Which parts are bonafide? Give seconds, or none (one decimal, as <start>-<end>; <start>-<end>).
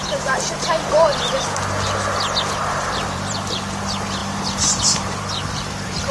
1.1-2.6